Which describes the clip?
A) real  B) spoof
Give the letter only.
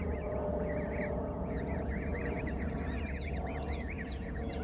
B